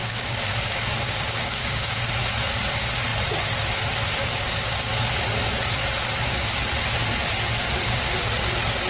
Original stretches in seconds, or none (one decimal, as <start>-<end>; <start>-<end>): 2.1-4.2; 4.9-8.9